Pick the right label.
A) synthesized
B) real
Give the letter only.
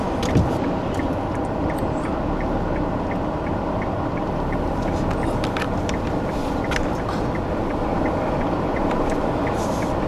B